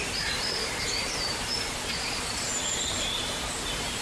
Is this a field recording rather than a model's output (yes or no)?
no